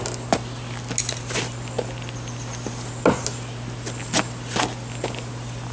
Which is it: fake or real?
real